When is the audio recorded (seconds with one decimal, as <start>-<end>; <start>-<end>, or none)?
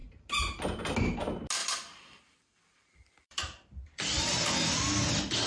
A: 0.0-1.6; 4.4-5.5